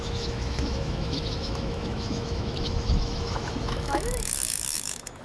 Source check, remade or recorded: remade